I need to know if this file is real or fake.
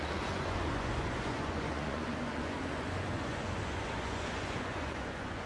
fake